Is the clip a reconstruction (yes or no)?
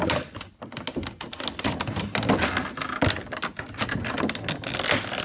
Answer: no